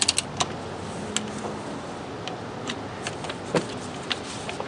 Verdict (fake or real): real